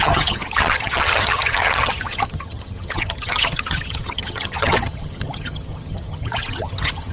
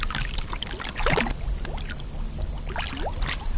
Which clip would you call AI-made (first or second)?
first